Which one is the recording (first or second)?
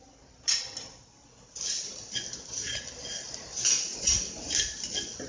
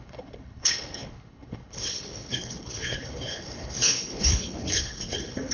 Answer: first